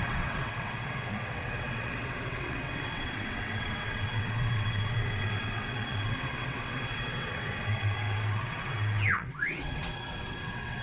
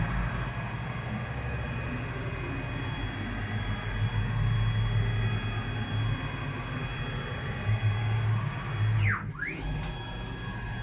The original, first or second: second